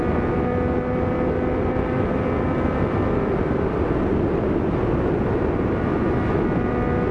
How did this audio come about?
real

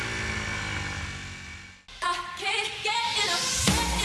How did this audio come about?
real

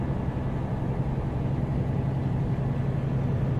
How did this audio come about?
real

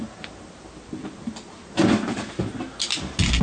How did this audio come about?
real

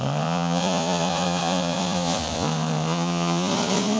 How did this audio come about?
fake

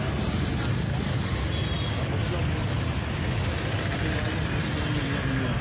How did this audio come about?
real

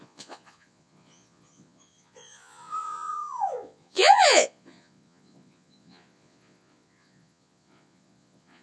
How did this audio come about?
fake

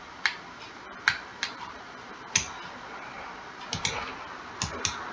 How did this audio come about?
real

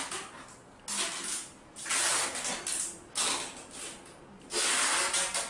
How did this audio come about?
real